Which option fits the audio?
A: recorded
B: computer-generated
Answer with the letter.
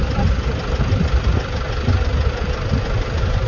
A